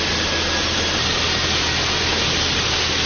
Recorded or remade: recorded